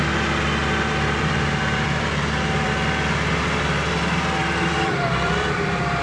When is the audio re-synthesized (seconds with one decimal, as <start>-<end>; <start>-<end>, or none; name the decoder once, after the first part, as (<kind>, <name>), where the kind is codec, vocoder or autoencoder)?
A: 0.6-3.4 (vocoder, BigVGAN v2); 4.4-6.0